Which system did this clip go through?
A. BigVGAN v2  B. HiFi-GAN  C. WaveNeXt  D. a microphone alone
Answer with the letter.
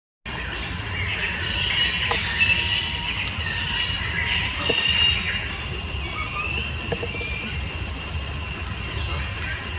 D